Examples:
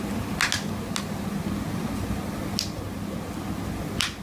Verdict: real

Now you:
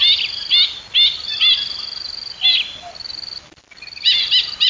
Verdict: real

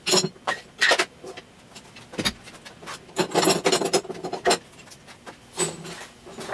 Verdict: real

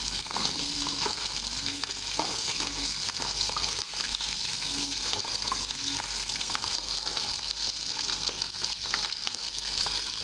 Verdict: fake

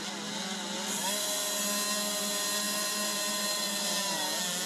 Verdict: real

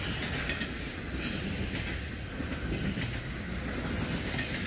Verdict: real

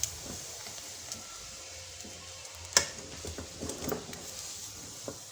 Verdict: real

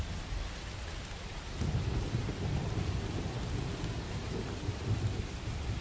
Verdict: real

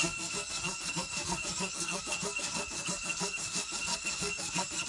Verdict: fake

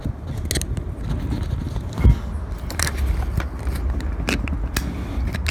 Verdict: real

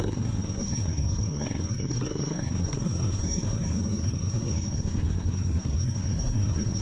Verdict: fake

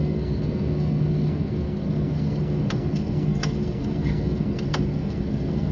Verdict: fake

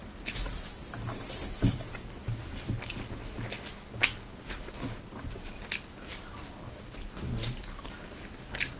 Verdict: real